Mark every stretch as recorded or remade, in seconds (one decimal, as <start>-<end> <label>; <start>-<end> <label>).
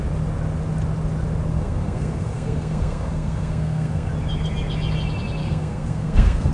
0.0-1.5 recorded; 1.5-4.1 remade; 4.1-5.4 recorded; 5.4-6.5 remade